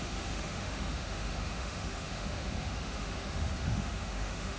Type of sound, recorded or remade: remade